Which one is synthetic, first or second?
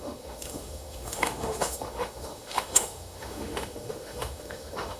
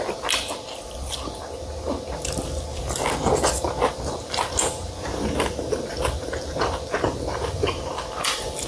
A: first